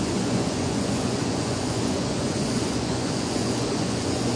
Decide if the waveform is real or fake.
fake